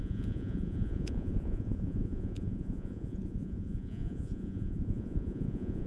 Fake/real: fake